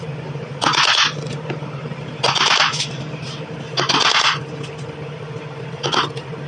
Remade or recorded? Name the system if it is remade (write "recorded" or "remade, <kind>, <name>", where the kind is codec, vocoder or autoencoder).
recorded